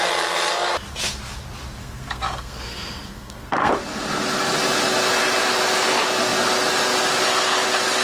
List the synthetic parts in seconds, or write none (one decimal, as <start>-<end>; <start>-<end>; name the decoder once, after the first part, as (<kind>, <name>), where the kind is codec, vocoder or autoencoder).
1.8-3.7 (codec, SNAC)